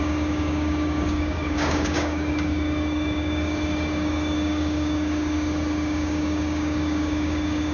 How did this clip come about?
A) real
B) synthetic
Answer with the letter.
B